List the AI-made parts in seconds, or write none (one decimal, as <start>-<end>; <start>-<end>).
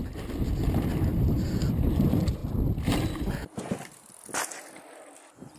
none